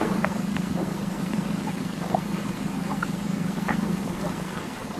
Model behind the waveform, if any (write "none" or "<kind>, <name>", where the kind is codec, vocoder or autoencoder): codec, SNAC